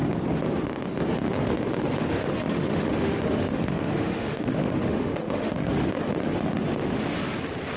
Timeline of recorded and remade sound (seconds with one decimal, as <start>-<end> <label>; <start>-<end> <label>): 0.0-2.2 recorded; 2.2-5.9 remade; 5.9-7.8 recorded